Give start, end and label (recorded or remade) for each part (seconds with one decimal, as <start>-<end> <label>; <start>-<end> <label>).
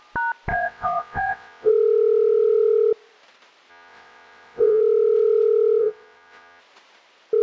0.0-0.5 recorded; 0.5-1.7 remade; 1.7-3.7 recorded; 3.7-4.8 remade; 4.8-5.8 recorded; 5.8-6.6 remade; 6.6-7.4 recorded